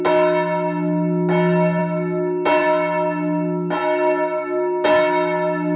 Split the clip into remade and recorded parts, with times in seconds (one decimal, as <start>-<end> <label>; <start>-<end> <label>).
0.0-5.8 recorded